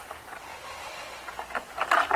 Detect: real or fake real